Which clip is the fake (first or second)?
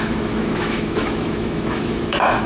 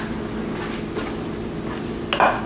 first